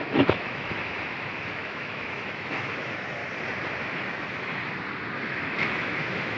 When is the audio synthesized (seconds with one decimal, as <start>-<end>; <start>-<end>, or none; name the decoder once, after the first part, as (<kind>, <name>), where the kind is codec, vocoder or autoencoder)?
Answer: 0.0-3.2 (autoencoder, DAC-VAE); 3.8-4.6; 5.2-6.4